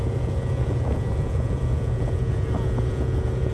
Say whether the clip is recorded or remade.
remade